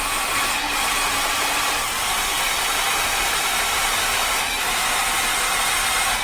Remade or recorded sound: remade